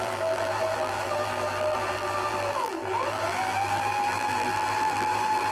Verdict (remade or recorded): remade